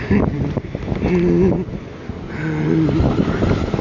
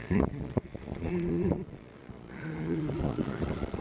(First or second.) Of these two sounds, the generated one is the second